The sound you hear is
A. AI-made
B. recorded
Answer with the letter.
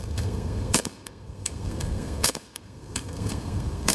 A